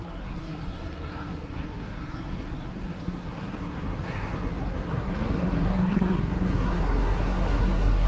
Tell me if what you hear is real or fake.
fake